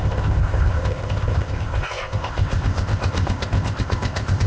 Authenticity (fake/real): fake